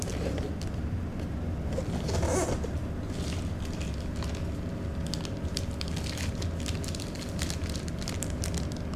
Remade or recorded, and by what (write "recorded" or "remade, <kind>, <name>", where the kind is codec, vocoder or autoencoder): recorded